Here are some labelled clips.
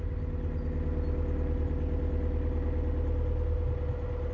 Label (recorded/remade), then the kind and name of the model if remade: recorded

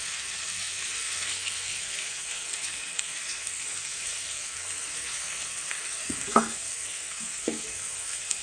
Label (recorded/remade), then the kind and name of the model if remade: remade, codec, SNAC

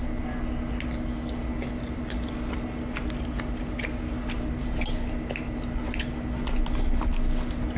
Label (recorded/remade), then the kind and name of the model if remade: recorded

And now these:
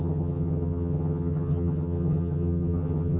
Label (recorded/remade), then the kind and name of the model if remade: remade, vocoder, HiFi-GAN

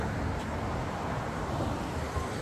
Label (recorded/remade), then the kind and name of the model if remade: recorded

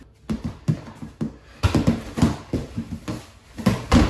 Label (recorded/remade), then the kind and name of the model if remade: recorded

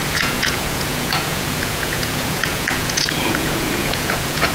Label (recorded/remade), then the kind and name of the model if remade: remade, vocoder, Vocos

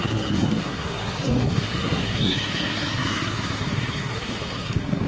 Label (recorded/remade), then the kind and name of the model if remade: remade, codec, SNAC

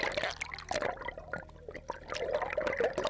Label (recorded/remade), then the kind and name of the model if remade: recorded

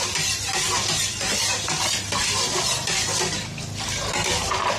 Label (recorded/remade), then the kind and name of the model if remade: recorded